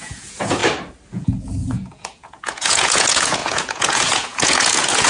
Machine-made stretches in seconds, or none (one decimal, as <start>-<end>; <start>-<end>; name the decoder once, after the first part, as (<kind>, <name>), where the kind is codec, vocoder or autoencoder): 0.0-0.6 (vocoder, Vocos); 1.1-5.1